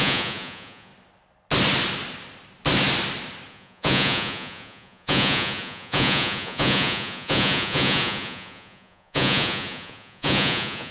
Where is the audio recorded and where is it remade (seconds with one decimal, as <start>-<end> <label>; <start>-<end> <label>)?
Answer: 0.0-0.9 remade; 0.9-3.5 recorded; 3.5-10.9 remade